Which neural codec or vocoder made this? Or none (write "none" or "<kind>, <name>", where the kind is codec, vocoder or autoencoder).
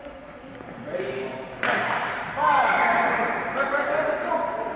vocoder, BigVGAN v2